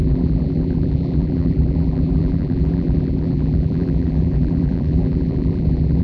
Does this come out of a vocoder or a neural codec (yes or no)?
yes